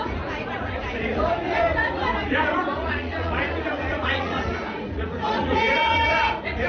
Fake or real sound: fake